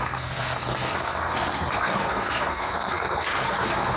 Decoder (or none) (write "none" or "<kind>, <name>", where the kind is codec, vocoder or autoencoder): codec, SNAC